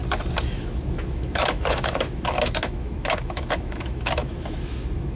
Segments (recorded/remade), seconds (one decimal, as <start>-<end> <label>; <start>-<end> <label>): 0.0-0.5 recorded; 0.5-5.2 remade